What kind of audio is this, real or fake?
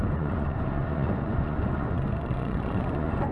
fake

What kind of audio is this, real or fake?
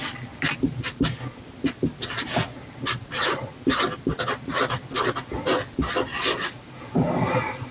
real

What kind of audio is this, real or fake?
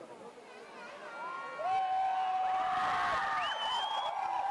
real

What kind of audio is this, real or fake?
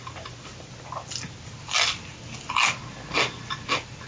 real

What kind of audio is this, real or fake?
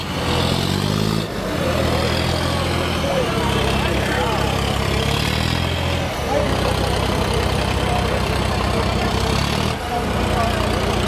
real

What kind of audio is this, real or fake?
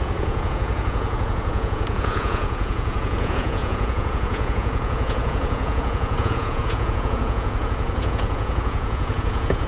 fake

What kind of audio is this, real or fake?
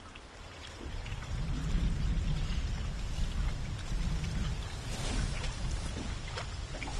real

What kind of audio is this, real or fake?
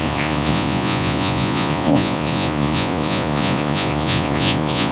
fake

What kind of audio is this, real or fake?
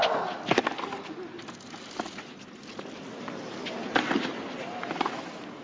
real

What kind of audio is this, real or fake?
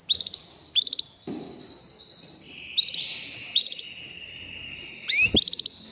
real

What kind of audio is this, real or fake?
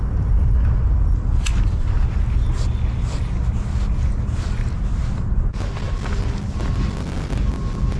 real